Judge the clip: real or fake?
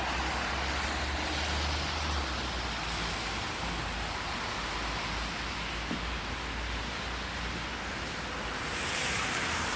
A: real